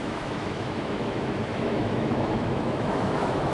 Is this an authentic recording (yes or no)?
no